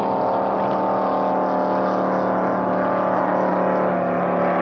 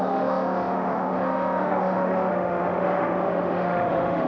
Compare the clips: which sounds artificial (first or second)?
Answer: second